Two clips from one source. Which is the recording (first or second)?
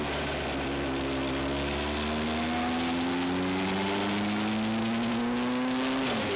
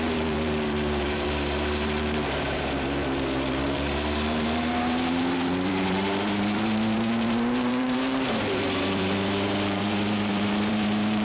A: first